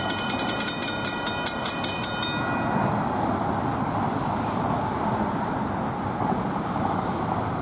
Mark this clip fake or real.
real